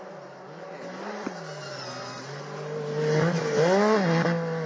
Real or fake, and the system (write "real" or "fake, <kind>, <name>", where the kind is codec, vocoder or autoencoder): real